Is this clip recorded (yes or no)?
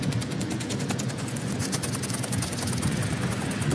no